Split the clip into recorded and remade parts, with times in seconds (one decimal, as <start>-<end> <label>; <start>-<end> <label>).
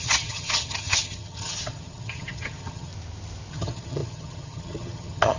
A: 0.0-2.9 remade; 2.9-3.5 recorded; 3.5-5.4 remade